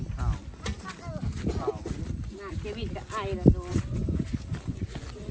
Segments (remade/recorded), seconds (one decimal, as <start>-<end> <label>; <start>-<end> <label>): 0.0-3.7 recorded; 3.7-4.3 remade; 4.3-4.7 recorded; 4.7-5.3 remade